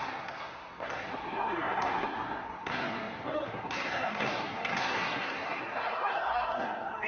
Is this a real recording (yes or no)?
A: no